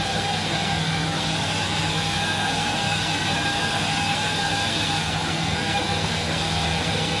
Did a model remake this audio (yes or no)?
yes